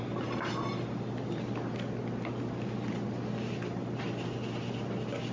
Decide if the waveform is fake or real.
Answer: real